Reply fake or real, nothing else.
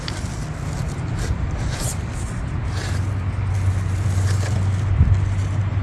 real